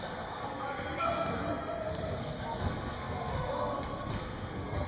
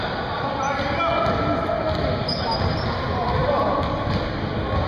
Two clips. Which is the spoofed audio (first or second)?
first